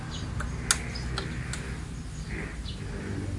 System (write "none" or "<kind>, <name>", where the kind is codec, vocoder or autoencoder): none